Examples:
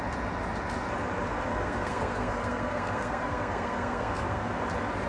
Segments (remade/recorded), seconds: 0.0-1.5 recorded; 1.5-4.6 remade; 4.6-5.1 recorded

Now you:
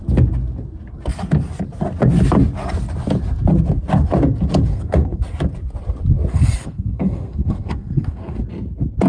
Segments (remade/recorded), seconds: 0.0-4.7 recorded; 4.7-5.2 remade; 5.2-6.3 recorded; 6.3-8.4 remade; 8.4-9.1 recorded

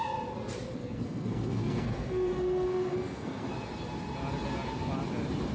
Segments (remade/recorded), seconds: 0.0-0.8 recorded; 0.8-3.5 remade; 3.5-5.5 recorded

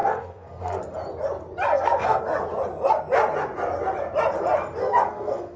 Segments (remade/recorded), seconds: 0.0-0.8 remade; 0.8-1.7 recorded; 1.7-2.2 remade; 2.2-4.8 recorded; 4.8-5.6 remade

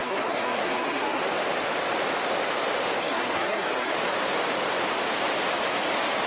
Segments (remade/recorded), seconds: 0.0-1.2 remade; 1.2-3.0 recorded; 3.0-3.9 remade; 3.9-6.3 recorded

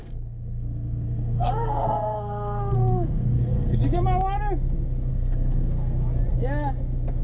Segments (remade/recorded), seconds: 0.0-3.8 remade; 3.8-5.1 recorded; 5.1-6.1 remade; 6.1-7.2 recorded

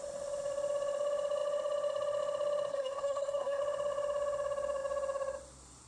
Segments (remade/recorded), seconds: 0.0-2.7 recorded; 2.7-3.6 remade; 3.6-5.9 recorded

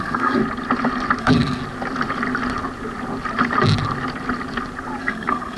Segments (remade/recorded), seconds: 0.0-0.4 remade; 0.4-1.2 recorded; 1.2-1.6 remade; 1.6-5.0 recorded; 5.0-5.6 remade